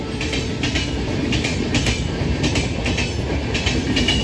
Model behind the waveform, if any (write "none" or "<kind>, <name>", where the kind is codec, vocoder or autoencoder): none